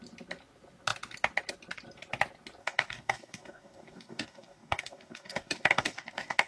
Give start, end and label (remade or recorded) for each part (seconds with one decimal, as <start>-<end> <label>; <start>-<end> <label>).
0.0-2.6 recorded; 2.6-6.5 remade